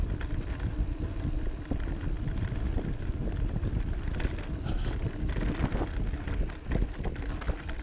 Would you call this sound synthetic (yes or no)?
no